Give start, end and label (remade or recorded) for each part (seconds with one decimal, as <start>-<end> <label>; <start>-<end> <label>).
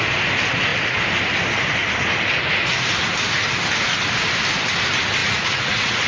0.0-5.2 recorded; 5.2-6.1 remade